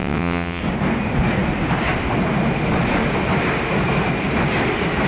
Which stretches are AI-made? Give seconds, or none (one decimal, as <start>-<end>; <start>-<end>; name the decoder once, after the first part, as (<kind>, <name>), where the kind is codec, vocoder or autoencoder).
0.0-0.6 (vocoder, WaveNeXt)